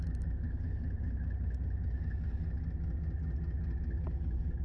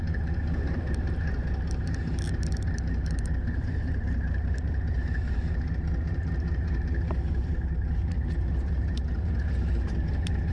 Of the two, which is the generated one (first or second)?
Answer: second